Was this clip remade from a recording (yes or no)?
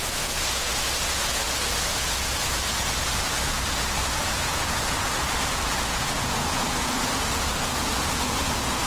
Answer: yes